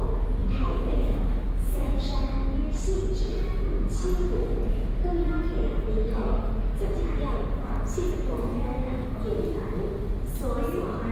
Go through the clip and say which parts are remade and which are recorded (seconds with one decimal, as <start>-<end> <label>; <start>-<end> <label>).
0.0-0.4 recorded; 0.4-2.2 remade; 2.2-8.5 recorded; 8.5-9.1 remade; 9.1-11.1 recorded